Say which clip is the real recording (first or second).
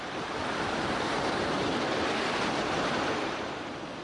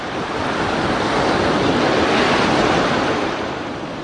second